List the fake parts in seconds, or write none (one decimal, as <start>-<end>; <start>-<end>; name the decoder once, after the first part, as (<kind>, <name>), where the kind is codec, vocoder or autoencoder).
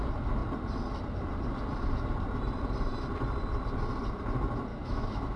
4.7-5.4 (autoencoder, DAC-VAE)